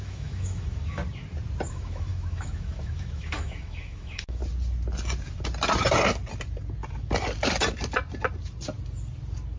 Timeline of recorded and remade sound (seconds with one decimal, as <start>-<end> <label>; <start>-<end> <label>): 0.0-1.0 remade; 1.0-1.7 recorded; 1.7-4.4 remade; 4.4-9.6 recorded